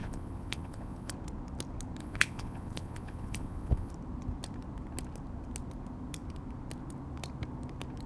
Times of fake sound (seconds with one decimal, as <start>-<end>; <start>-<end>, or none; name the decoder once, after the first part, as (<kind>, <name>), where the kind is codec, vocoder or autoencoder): 0.0-1.1 (vocoder, Vocos); 2.0-3.9